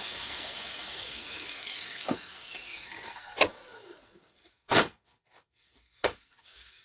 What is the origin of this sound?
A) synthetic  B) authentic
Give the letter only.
A